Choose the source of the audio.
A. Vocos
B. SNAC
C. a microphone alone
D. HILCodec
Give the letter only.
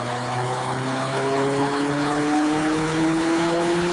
D